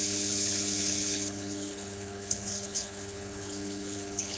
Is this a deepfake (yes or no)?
yes